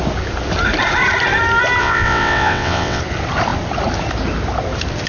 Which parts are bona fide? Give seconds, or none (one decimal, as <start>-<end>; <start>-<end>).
0.0-1.8; 3.0-5.1

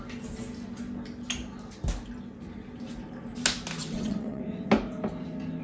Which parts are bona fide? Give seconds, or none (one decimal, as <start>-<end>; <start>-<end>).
0.0-3.8; 4.4-5.6

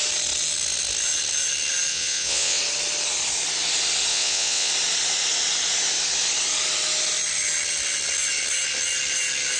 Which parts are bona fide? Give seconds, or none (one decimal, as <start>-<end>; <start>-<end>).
0.0-1.9; 2.6-4.1; 4.7-9.6

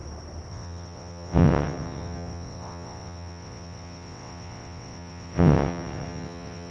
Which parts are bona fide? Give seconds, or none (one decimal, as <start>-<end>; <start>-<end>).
0.0-0.5

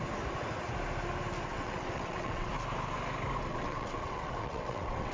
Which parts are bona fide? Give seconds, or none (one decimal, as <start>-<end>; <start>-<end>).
0.0-1.5; 2.5-3.5

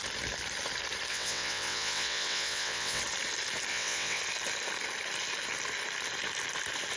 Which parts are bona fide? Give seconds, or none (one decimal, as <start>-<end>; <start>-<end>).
0.0-1.1; 3.0-3.7; 4.2-7.0